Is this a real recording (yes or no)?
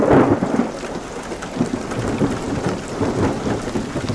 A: yes